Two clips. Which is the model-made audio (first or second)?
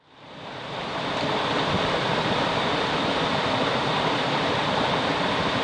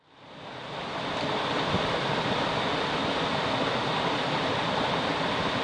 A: first